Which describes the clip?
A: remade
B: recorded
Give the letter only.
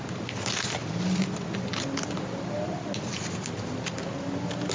B